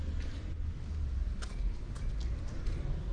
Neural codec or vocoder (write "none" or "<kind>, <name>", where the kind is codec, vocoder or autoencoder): none